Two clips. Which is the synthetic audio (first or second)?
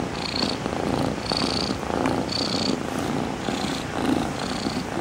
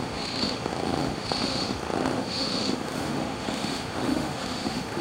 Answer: second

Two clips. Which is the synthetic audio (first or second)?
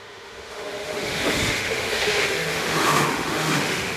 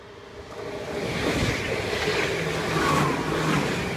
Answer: first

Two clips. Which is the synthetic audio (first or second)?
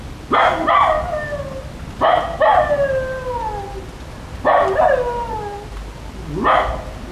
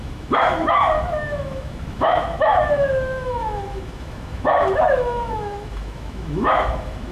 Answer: second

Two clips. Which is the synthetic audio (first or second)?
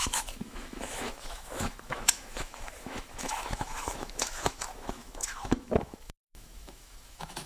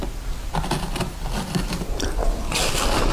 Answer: first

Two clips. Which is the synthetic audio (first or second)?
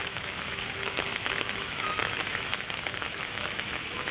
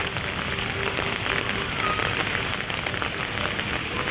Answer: first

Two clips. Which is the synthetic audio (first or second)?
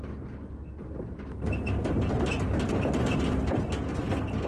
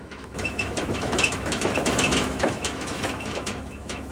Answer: second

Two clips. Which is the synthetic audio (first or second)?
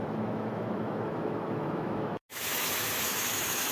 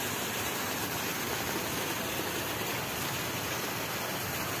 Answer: first